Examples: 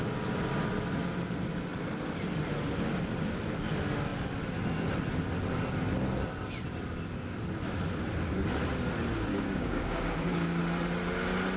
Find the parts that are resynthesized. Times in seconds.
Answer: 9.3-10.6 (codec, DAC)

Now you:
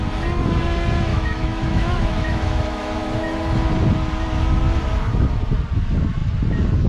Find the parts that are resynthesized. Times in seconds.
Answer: 1.1-3.4 (autoencoder, DAC-VAE)

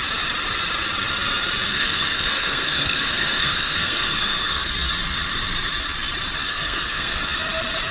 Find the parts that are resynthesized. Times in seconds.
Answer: 1.7-4.7 (codec, SNAC); 6.5-7.2

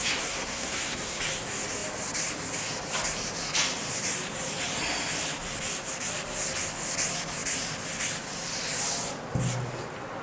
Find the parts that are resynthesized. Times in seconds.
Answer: 0.0-1.2 (codec, SNAC)

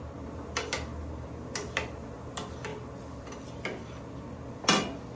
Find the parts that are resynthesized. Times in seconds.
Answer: none

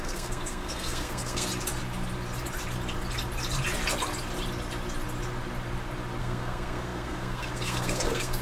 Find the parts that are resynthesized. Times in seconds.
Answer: 0.0-1.5 (codec, SNAC); 6.2-8.4

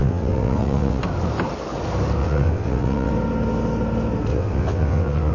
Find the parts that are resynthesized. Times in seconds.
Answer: 0.0-1.0 (vocoder, WaveNeXt); 2.2-3.1; 4.3-5.3